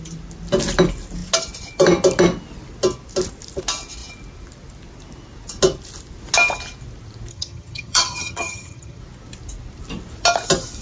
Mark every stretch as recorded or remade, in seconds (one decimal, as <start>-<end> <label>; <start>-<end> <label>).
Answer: 0.0-7.3 recorded; 7.3-9.0 remade; 9.0-10.8 recorded